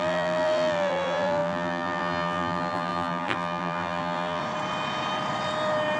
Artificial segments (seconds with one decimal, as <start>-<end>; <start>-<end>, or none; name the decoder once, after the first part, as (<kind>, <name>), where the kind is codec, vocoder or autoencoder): 0.0-4.4 (vocoder, BigVGAN v2)